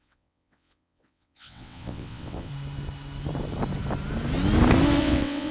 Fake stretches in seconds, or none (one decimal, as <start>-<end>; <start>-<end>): 0.0-2.5; 5.0-5.5